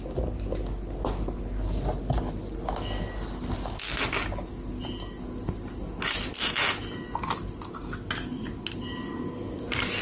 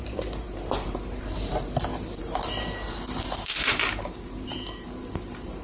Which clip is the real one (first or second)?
first